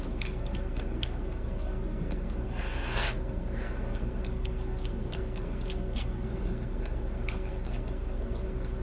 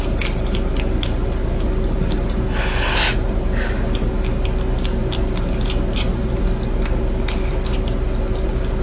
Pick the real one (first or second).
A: second